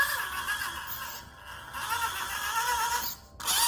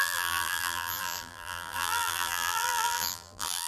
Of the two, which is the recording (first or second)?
first